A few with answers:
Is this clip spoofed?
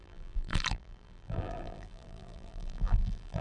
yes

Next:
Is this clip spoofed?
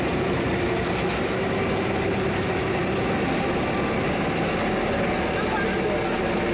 no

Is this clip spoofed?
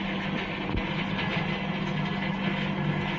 no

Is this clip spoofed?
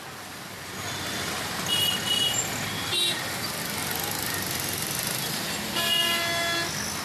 no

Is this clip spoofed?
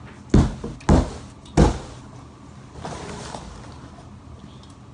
no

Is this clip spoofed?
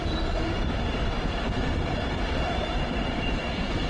yes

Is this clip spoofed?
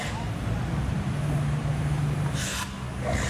no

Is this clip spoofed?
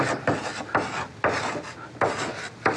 no